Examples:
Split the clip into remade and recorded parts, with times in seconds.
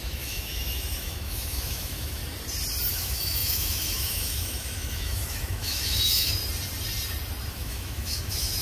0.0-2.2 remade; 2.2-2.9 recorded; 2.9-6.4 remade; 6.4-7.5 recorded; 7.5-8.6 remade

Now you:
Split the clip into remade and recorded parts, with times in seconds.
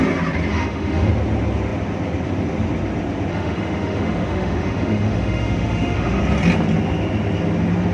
0.0-0.5 recorded; 0.5-1.1 remade; 1.1-3.3 recorded; 3.3-6.2 remade; 6.2-7.9 recorded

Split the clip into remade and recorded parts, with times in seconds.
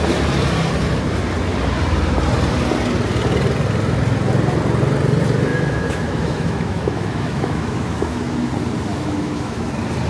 0.0-5.5 recorded; 5.5-8.5 remade; 8.5-8.9 recorded; 8.9-9.7 remade; 9.7-10.1 recorded